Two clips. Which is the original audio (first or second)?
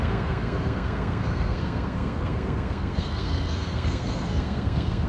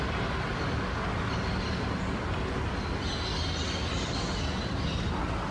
second